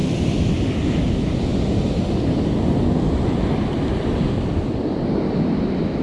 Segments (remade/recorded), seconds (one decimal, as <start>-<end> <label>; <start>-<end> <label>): 0.0-6.0 recorded